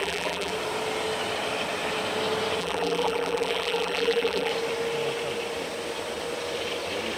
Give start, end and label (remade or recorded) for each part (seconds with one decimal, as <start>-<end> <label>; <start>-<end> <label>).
0.0-0.5 remade; 0.5-2.6 recorded; 2.6-4.5 remade; 4.5-7.2 recorded